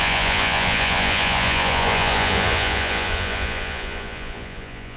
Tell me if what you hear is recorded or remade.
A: remade